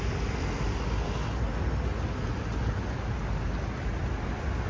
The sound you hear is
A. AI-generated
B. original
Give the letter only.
B